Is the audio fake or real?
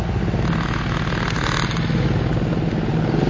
real